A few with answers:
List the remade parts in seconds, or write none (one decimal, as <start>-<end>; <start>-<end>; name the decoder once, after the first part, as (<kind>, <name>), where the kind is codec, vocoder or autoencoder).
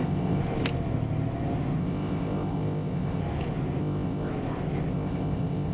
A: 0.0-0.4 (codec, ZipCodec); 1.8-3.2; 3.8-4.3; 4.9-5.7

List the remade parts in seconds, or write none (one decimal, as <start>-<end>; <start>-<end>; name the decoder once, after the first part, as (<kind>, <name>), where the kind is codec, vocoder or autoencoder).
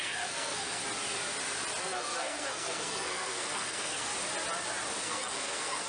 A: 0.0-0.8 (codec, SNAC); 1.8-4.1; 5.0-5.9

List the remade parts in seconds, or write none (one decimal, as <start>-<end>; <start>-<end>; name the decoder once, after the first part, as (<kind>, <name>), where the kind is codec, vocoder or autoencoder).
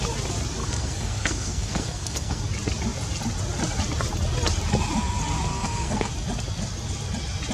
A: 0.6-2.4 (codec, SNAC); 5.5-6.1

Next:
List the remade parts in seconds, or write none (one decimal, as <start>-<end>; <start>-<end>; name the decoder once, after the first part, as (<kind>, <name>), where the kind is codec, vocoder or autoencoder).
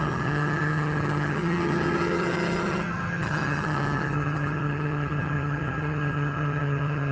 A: 0.0-7.1 (vocoder, HiFi-GAN)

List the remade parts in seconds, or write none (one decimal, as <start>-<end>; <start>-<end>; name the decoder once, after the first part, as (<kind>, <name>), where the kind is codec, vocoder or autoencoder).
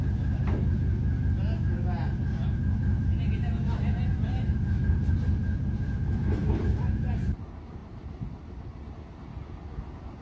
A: 4.1-4.9 (vocoder, BigVGAN v2); 6.4-6.9; 7.8-8.9